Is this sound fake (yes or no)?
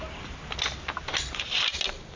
no